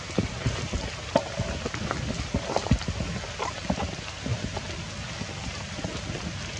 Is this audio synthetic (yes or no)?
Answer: no